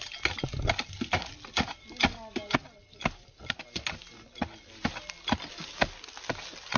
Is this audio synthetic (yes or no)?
no